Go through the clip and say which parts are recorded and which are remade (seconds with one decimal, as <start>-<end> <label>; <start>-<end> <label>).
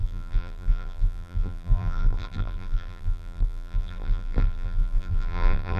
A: 0.0-5.8 remade